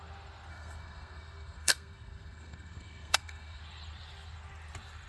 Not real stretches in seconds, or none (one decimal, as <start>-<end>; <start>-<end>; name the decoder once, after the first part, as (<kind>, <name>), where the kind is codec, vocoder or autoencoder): 0.5-3.6 (codec, SNAC)